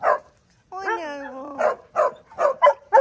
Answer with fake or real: real